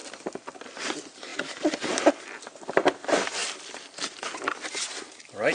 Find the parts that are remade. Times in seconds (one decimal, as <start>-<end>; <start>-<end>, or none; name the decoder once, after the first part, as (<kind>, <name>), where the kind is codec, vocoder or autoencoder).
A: 3.4-4.2 (vocoder, BigVGAN v2)